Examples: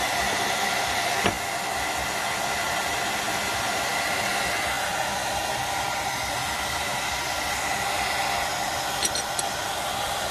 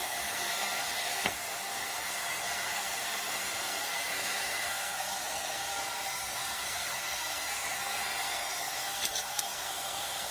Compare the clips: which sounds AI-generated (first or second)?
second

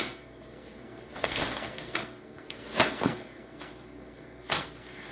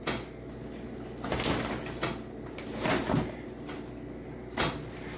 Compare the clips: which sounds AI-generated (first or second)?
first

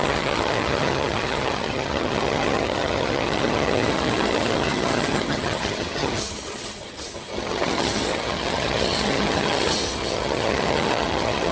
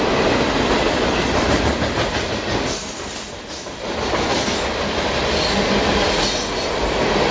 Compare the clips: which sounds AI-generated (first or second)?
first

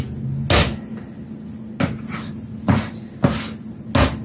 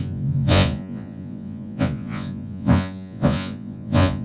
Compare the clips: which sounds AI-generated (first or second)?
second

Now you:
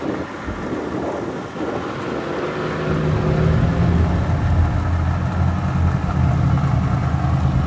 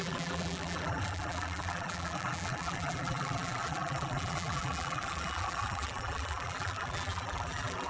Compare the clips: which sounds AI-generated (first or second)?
second